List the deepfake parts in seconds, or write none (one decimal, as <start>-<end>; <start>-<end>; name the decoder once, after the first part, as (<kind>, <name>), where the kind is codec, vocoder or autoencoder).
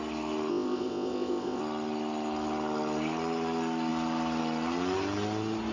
0.5-1.6 (codec, ZipCodec)